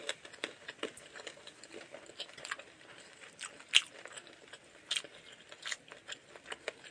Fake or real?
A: fake